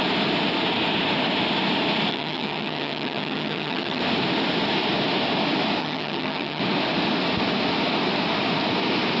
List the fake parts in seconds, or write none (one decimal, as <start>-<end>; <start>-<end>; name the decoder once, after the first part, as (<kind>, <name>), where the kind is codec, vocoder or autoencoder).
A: 2.1-4.0 (vocoder, HiFi-GAN); 5.8-6.6